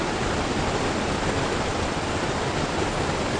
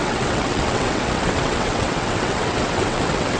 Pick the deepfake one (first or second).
second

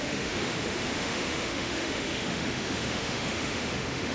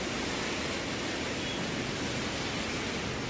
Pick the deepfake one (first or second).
first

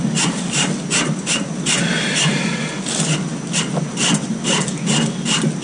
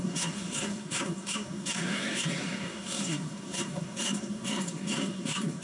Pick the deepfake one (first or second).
second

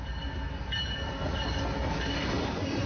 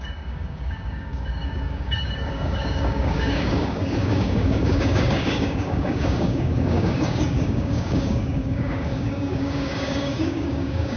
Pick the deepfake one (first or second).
second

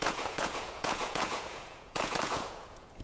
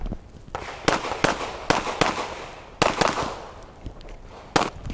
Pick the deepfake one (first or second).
first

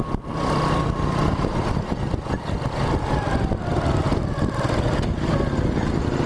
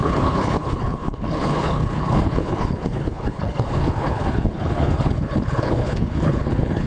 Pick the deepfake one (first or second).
second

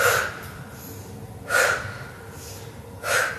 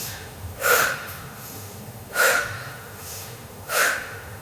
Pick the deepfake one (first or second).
second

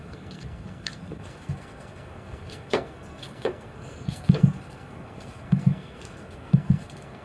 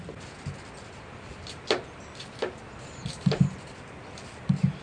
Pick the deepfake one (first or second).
first